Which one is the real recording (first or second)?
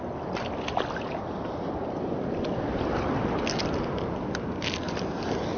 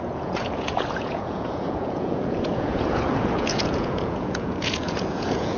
first